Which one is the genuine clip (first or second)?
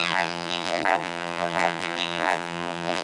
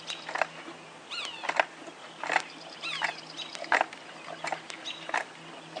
second